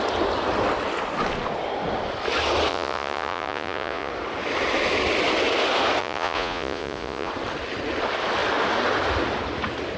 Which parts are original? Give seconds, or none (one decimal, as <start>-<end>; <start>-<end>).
0.0-2.7; 4.1-6.0; 7.3-10.0